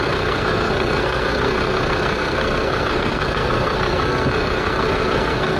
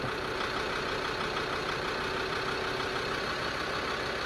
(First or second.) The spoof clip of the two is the first